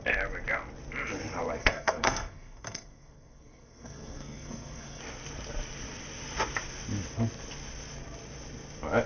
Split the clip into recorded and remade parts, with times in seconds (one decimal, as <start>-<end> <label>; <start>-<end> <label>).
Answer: 0.0-1.6 recorded; 1.6-5.0 remade; 5.0-9.1 recorded